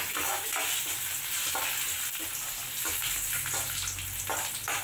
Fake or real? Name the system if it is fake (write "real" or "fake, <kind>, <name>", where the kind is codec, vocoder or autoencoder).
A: real